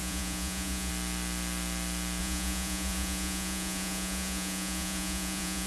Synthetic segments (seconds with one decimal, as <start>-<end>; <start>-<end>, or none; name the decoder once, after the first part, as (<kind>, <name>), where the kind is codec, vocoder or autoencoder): 0.0-0.9 (vocoder, Vocos); 2.2-5.7